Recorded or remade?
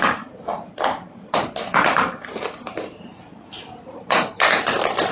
remade